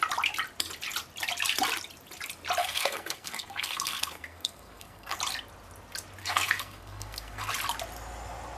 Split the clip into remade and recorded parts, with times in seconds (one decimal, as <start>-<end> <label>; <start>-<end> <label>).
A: 0.0-2.6 recorded; 2.6-5.2 remade; 5.2-6.2 recorded; 6.2-7.5 remade; 7.5-8.6 recorded